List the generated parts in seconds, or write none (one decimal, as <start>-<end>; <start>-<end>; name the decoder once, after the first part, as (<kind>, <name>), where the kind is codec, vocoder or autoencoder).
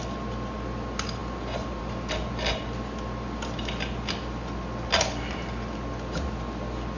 none